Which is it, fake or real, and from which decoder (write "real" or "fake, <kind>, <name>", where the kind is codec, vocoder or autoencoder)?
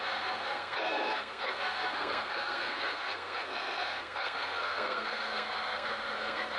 fake, codec, SNAC